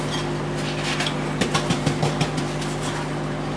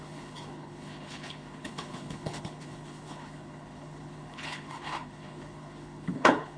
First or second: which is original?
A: first